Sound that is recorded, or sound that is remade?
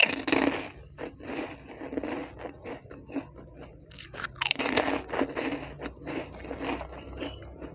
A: recorded